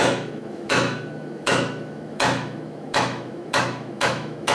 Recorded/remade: remade